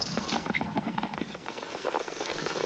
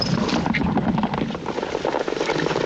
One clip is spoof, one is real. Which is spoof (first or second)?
first